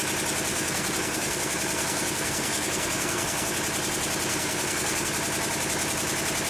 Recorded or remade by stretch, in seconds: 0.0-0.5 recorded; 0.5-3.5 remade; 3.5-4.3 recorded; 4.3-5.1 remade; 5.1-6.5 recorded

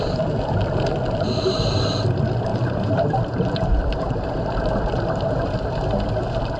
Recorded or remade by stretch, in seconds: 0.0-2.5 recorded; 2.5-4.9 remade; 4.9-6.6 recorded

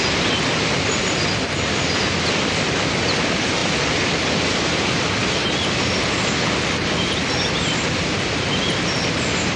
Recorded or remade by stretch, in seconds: 0.0-9.6 recorded